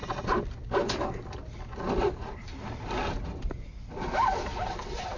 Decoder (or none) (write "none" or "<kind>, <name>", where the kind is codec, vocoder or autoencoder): none